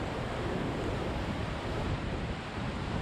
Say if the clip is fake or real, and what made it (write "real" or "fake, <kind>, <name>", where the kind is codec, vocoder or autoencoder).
fake, vocoder, BigVGAN v2